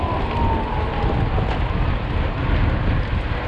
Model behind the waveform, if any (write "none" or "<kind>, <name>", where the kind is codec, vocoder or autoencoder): none